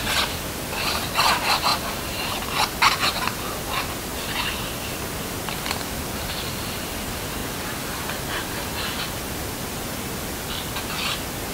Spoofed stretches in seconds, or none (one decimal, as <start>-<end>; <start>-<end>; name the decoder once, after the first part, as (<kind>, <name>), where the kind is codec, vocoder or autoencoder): none